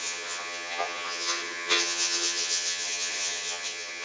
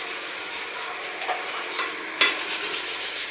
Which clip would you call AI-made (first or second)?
first